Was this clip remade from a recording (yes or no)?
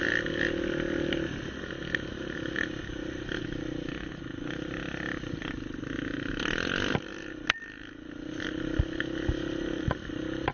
no